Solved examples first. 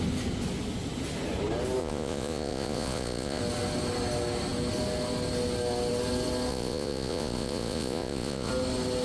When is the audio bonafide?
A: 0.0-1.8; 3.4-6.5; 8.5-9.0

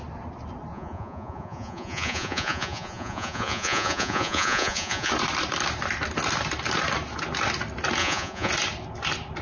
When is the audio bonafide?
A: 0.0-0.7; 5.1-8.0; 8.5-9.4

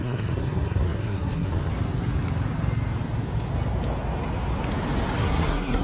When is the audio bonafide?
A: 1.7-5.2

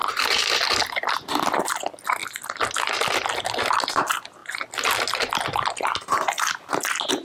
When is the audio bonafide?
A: 0.0-7.2

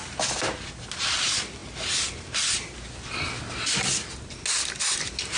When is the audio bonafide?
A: 0.0-5.4

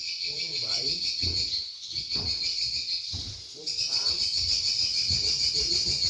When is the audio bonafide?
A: none